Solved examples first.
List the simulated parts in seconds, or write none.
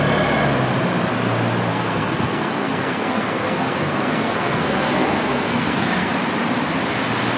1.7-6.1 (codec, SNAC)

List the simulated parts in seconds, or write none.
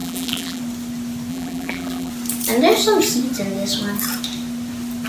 0.0-0.6 (vocoder, BigVGAN v2); 1.3-2.1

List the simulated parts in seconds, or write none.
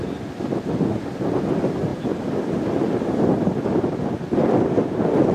none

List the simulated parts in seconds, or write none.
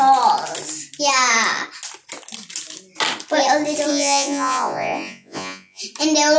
3.9-5.8 (vocoder, Vocos)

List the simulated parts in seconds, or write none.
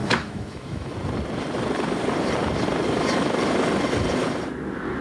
0.0-0.9 (autoencoder, DAC-VAE)